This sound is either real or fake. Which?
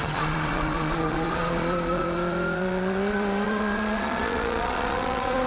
fake